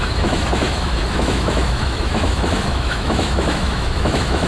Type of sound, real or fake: fake